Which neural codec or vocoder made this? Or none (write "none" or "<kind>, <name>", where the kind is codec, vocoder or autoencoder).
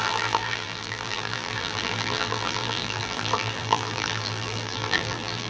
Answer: vocoder, BigVGAN v2